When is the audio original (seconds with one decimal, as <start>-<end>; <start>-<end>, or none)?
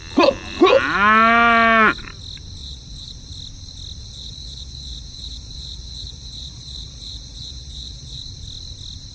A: 0.0-2.6; 3.3-4.0; 8.2-9.1